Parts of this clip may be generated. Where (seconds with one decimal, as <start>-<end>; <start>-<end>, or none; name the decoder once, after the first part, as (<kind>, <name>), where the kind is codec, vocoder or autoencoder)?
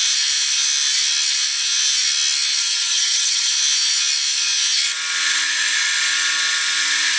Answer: 2.6-3.5 (vocoder, HiFi-GAN)